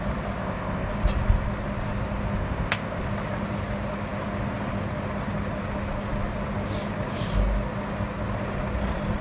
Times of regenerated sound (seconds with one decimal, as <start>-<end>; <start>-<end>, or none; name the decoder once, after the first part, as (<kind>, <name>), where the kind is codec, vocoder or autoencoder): 0.4-0.9 (codec, ZipCodec); 2.4-3.0